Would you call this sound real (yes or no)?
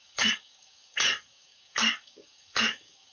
no